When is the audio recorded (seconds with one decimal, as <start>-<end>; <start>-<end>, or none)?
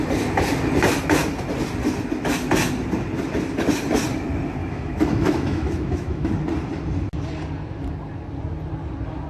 0.0-4.6; 6.3-9.3